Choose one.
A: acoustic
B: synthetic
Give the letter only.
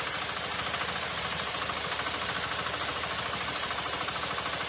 A